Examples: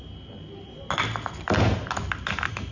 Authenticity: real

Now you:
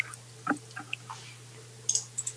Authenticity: real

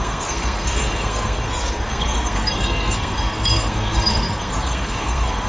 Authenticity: fake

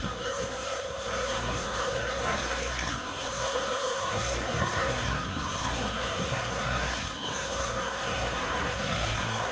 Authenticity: fake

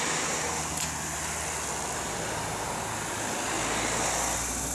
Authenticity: real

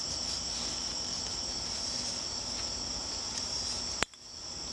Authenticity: real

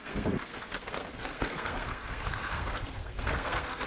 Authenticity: fake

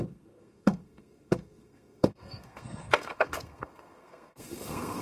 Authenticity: fake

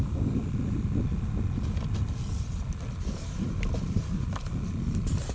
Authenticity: real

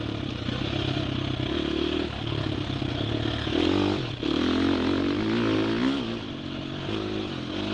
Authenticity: real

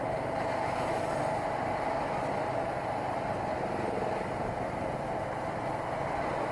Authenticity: real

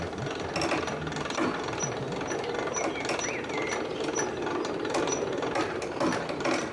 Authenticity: real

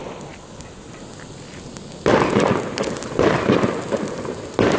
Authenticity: real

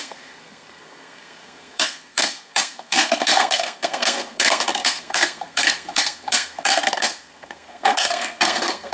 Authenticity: fake